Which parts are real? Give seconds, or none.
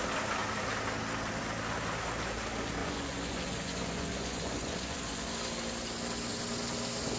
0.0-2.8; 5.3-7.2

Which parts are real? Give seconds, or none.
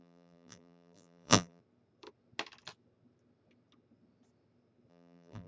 1.6-4.9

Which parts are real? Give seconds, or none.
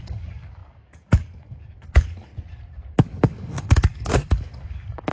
2.3-2.9